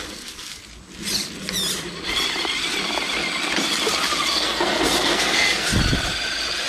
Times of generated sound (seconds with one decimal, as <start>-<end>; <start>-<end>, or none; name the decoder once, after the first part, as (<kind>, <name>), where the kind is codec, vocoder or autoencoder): 0.0-0.6 (codec, SNAC); 4.3-5.7